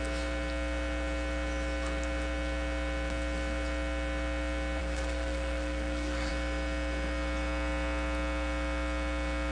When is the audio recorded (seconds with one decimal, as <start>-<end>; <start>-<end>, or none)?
0.0-4.8; 6.3-9.5